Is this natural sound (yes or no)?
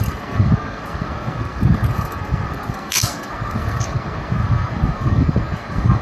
no